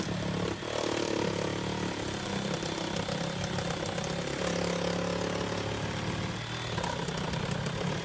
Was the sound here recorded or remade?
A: recorded